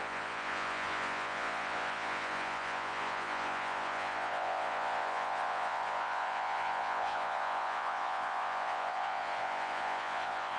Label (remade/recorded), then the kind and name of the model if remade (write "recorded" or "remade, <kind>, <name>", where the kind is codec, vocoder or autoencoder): remade, vocoder, Vocos